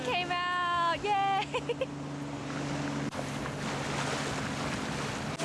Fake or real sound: real